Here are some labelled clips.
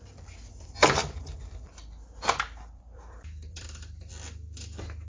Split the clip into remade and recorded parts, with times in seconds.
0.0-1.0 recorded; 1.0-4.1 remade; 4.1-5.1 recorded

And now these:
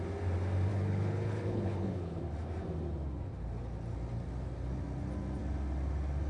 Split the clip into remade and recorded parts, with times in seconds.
0.0-0.7 recorded; 0.7-2.2 remade; 2.2-6.3 recorded

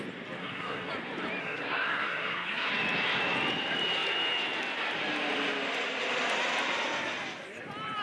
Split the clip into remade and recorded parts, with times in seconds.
0.0-0.4 recorded; 0.4-0.9 remade; 0.9-1.4 recorded; 1.4-2.7 remade; 2.7-8.0 recorded

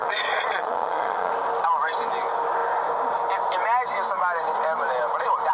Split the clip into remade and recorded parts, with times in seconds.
0.0-1.3 remade; 1.3-5.5 recorded

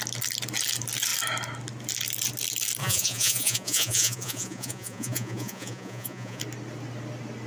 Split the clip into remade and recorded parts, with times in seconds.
0.0-2.8 recorded; 2.8-6.4 remade; 6.4-7.5 recorded

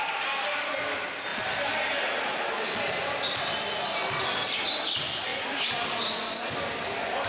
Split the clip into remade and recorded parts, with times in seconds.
0.0-7.3 recorded

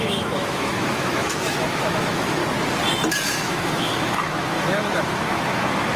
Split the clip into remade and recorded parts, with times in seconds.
0.0-2.4 remade; 2.4-3.1 recorded; 3.1-6.0 remade